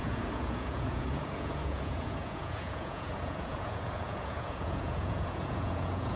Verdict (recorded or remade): remade